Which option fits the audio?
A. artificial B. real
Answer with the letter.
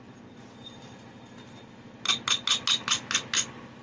B